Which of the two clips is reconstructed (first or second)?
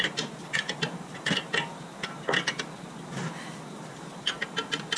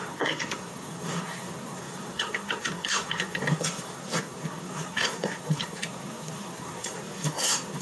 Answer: second